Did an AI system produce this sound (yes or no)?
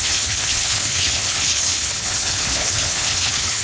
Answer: yes